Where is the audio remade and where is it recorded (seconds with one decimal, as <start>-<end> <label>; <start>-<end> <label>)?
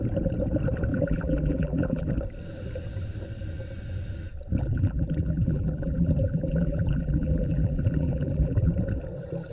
0.0-0.9 recorded; 0.9-2.1 remade; 2.1-4.6 recorded; 4.6-8.7 remade; 8.7-9.5 recorded